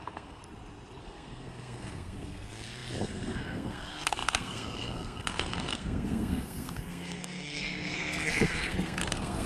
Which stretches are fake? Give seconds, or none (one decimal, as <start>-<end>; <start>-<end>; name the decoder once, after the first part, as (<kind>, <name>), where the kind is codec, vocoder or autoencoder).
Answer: 0.0-0.4 (codec, SNAC); 1.0-9.5